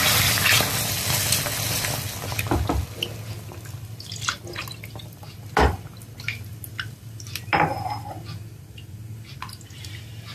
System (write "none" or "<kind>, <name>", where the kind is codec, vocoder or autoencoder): none